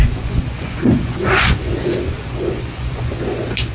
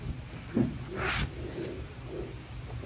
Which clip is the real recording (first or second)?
second